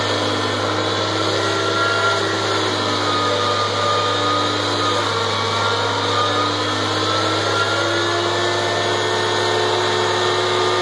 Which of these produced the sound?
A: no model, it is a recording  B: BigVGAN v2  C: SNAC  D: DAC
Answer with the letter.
A